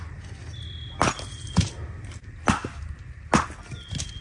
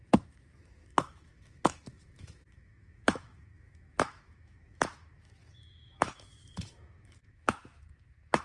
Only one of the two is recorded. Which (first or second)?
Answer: first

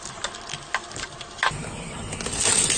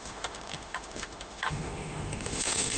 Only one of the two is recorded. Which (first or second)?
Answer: first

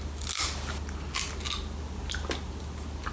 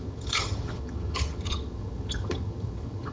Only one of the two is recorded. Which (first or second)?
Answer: first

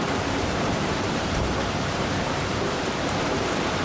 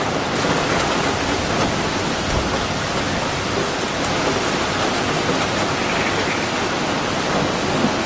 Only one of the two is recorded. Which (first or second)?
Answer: second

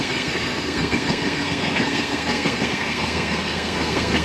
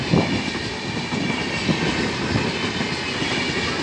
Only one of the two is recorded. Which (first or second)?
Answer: second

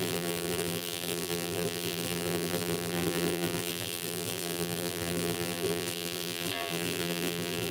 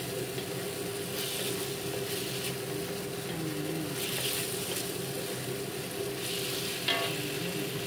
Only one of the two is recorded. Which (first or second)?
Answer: second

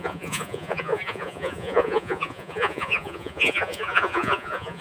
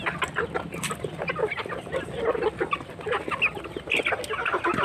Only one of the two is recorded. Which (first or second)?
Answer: second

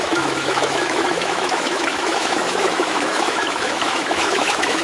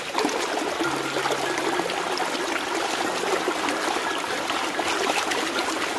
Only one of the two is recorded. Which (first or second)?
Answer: second